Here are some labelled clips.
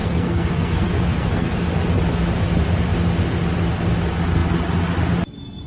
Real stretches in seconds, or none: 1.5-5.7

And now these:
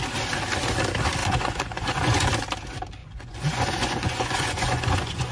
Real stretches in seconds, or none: 0.0-1.2; 2.3-3.0

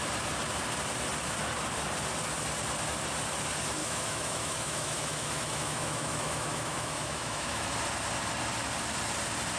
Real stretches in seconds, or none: 0.0-3.8; 7.7-9.6

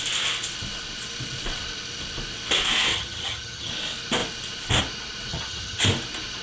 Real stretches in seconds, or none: 0.0-2.9; 3.7-5.3; 5.8-6.4

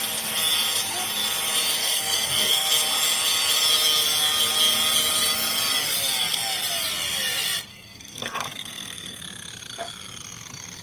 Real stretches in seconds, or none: 0.0-1.8; 2.7-7.7; 9.2-10.8

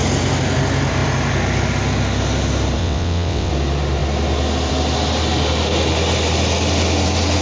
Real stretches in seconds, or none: 0.0-2.8; 3.5-7.4